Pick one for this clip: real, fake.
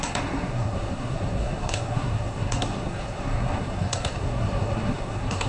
fake